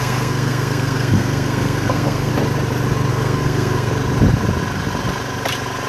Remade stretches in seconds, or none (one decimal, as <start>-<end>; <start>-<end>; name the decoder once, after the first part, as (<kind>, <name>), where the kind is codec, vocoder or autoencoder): 0.0-2.3 (codec, SNAC); 3.1-3.9